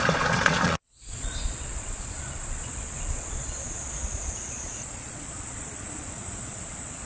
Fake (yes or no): yes